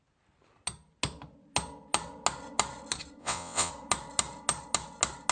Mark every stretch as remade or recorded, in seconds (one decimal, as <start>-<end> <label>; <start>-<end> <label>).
0.0-3.2 recorded; 3.2-3.7 remade; 3.7-5.3 recorded